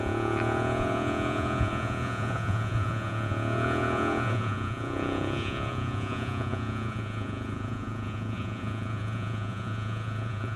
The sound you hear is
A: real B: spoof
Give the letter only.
B